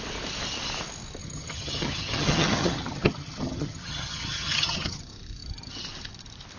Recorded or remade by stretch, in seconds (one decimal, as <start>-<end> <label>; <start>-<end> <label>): 0.0-1.2 recorded; 1.2-5.0 remade; 5.0-6.6 recorded